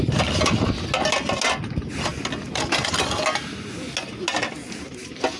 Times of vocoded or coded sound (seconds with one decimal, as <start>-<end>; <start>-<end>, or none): none